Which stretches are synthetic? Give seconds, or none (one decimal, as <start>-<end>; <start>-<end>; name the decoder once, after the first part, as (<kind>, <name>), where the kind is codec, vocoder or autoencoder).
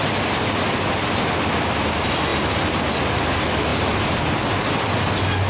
none